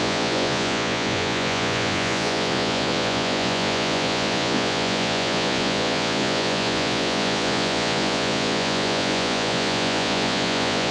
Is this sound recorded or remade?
remade